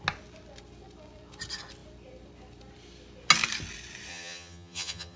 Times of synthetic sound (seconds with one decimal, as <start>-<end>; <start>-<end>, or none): 4.1-5.2